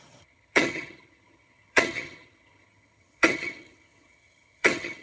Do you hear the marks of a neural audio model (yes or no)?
yes